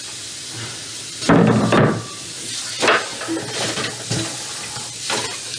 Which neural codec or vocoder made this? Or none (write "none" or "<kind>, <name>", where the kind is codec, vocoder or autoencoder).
none